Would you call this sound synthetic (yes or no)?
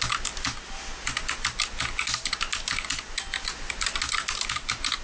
no